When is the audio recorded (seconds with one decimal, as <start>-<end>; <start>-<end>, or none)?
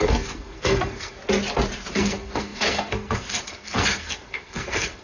1.2-1.9